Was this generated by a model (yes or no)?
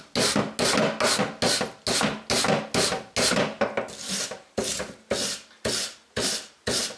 no